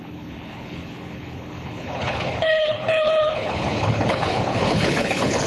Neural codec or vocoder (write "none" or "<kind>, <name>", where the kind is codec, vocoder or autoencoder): codec, HILCodec